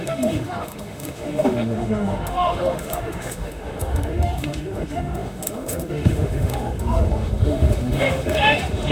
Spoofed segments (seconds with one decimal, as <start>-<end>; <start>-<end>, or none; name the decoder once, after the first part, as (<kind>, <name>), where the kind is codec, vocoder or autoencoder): 0.0-8.9 (autoencoder, DAC-VAE)